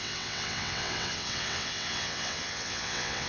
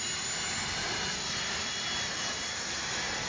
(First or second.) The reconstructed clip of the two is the first